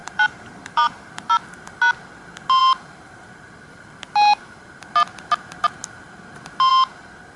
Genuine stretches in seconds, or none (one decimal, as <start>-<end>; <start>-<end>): 1.3-7.4